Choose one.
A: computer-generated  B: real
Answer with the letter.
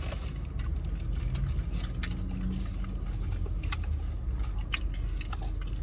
B